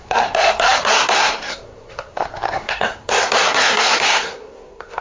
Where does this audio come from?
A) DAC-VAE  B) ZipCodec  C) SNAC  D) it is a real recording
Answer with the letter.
C